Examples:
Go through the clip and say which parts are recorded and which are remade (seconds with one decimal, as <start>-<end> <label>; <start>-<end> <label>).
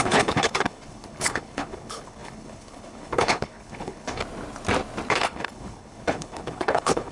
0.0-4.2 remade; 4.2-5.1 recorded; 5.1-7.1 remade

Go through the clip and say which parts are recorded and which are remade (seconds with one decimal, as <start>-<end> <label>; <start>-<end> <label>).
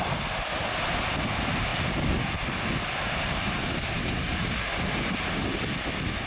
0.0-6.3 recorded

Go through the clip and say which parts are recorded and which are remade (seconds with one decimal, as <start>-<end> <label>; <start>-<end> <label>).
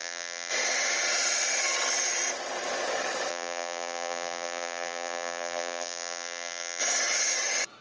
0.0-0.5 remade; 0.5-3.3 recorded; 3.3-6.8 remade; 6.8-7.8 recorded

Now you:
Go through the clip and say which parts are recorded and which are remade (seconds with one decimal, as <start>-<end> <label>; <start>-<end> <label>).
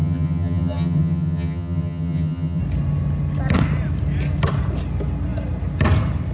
0.0-2.6 remade; 2.6-6.3 recorded